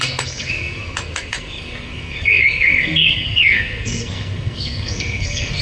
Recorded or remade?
remade